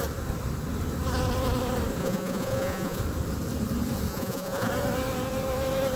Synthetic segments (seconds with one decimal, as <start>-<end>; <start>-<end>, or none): 2.0-3.0; 4.1-4.7